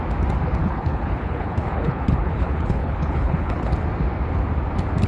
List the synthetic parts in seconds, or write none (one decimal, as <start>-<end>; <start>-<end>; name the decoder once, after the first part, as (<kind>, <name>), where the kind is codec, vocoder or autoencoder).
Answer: 0.6-3.7 (codec, HILCodec)